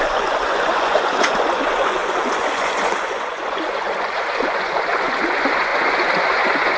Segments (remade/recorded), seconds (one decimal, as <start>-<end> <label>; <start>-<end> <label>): 0.0-6.8 remade